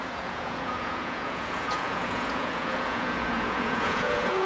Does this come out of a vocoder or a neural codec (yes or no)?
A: yes